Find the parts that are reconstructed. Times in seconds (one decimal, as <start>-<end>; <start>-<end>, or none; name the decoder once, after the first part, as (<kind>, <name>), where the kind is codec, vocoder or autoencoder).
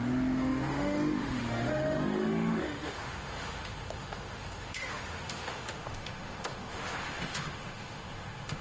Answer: 0.0-8.6 (autoencoder, DAC-VAE)